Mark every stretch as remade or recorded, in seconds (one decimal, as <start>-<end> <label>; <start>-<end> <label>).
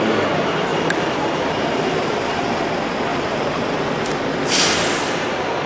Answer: 0.0-0.7 recorded; 0.7-2.6 remade; 2.6-3.1 recorded; 3.1-4.6 remade; 4.6-5.7 recorded